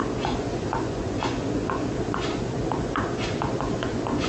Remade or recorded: remade